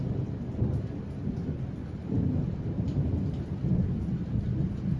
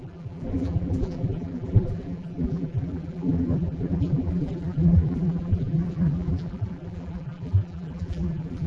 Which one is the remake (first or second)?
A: second